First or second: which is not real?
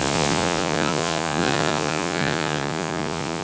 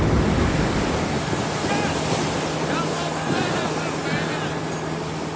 first